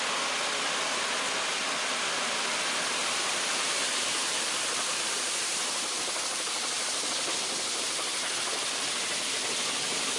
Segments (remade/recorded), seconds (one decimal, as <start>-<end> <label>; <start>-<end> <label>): 0.0-3.0 recorded; 3.0-7.0 remade; 7.0-10.2 recorded

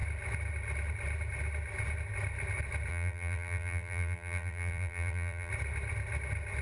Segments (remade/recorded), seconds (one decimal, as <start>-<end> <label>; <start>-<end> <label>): 0.0-2.9 recorded; 2.9-5.5 remade; 5.5-6.6 recorded

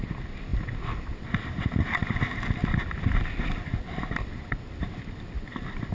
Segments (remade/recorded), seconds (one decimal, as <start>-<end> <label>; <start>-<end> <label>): 0.0-5.9 recorded

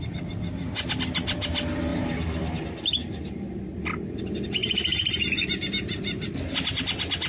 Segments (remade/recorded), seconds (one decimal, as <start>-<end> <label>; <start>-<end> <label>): 0.0-1.9 recorded; 1.9-3.6 remade; 3.6-4.6 recorded; 4.6-5.7 remade; 5.7-7.3 recorded